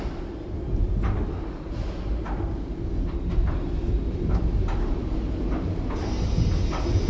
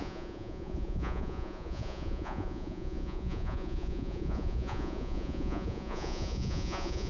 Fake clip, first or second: second